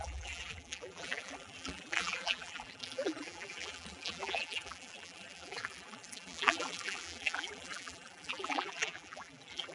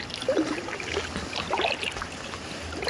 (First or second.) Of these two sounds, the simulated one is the first